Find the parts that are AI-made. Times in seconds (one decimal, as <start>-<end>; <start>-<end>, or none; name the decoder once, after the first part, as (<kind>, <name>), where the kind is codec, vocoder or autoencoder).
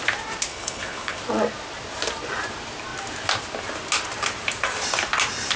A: 0.5-1.2 (codec, HILCodec)